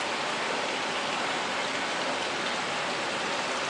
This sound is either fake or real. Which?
real